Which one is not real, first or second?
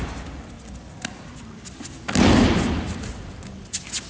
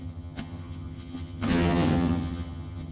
second